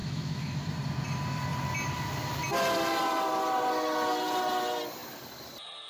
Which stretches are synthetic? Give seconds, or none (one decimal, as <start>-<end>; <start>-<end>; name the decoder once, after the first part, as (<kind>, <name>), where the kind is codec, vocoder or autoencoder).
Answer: 0.0-0.7 (autoencoder, DAC-VAE)

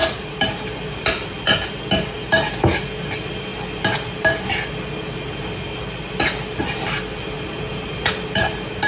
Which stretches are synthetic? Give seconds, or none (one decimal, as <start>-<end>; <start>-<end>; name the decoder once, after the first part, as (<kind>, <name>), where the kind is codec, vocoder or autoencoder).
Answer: none

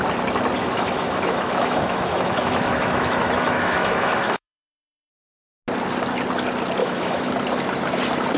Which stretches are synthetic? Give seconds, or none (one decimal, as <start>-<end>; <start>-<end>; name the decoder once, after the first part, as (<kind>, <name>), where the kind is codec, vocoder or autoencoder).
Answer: 0.6-5.1 (autoencoder, DAC-VAE); 6.8-7.3

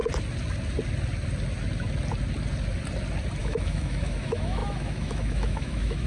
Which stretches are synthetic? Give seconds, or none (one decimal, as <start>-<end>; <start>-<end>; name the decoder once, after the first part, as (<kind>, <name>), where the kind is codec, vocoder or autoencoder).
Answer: 3.4-6.1 (autoencoder, DAC-VAE)

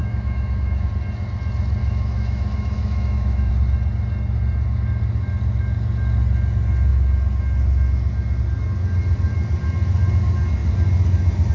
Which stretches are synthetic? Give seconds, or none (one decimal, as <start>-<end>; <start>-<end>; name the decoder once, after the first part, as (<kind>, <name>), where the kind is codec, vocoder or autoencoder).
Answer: 0.0-0.9 (autoencoder, DAC-VAE); 1.8-3.5

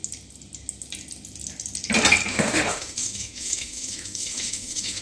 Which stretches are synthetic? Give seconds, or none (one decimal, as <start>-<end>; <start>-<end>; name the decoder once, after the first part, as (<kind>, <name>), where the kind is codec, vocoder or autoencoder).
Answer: 2.3-5.0 (autoencoder, DAC-VAE)

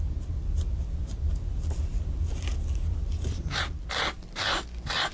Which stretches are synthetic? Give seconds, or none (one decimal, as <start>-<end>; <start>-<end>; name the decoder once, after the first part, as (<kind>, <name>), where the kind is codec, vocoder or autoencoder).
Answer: none

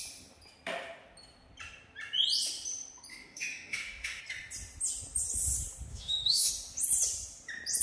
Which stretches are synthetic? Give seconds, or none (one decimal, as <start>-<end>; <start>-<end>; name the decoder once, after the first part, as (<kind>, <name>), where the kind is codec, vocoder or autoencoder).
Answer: 3.1-4.2 (autoencoder, DAC-VAE); 5.9-6.5